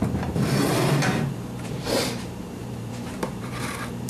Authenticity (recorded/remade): remade